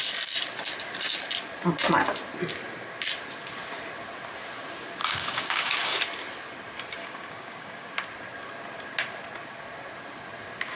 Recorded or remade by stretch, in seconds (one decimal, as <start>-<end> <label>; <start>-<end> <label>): 0.0-5.0 recorded; 5.0-6.0 remade; 6.0-7.0 recorded; 7.0-7.9 remade; 7.9-10.8 recorded